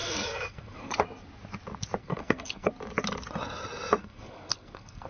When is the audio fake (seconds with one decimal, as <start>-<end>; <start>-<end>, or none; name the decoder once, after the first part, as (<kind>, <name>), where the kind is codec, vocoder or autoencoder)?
0.0-0.9 (codec, SNAC); 2.0-2.7; 4.0-5.1